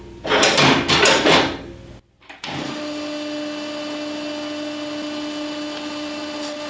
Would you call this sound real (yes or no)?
yes